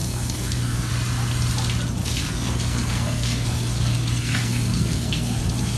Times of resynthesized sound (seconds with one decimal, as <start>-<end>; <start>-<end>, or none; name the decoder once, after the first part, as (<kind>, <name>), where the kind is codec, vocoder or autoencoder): 0.0-0.9 (codec, SNAC); 2.0-5.8